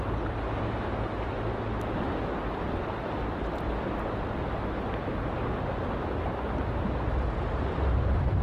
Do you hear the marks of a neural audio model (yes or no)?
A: no